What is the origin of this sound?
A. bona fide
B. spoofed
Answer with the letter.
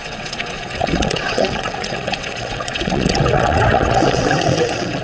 B